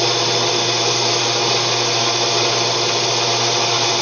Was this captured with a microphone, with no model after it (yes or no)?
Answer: yes